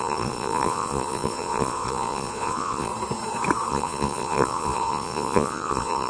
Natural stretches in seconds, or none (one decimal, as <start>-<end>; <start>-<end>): 2.9-3.7